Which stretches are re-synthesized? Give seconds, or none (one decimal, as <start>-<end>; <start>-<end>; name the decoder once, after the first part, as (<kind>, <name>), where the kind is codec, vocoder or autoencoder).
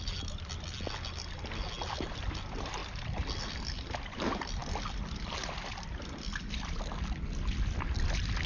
none